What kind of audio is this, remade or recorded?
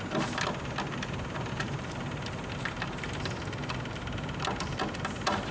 recorded